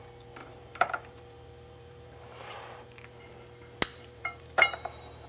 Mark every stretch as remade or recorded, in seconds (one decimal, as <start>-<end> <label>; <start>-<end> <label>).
0.0-0.4 recorded; 0.4-3.3 remade; 3.3-3.9 recorded; 3.9-5.3 remade